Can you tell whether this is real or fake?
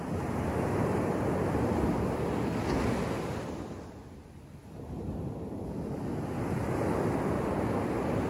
real